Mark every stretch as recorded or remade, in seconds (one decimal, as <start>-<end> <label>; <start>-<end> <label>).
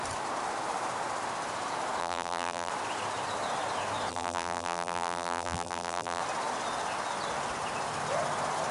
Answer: 0.0-2.0 recorded; 2.0-2.7 remade; 2.7-4.1 recorded; 4.1-6.2 remade; 6.2-8.7 recorded